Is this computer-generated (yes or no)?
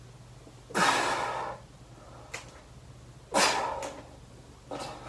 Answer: no